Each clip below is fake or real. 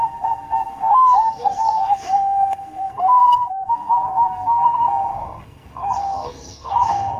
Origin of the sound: fake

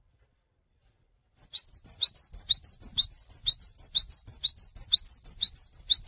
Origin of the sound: fake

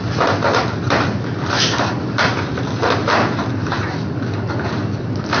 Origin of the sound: real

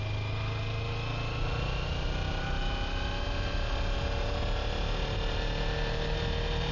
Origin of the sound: real